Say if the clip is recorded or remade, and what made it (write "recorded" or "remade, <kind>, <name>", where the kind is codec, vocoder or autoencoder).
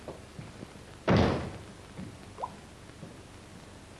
recorded